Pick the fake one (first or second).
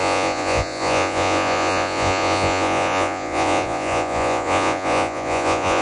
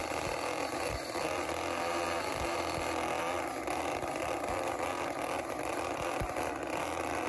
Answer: first